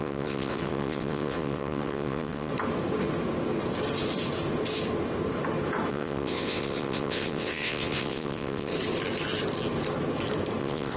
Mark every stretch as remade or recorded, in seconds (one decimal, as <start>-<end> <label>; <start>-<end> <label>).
0.0-2.5 remade; 2.5-5.9 recorded; 5.9-8.7 remade; 8.7-10.6 recorded; 10.6-11.0 remade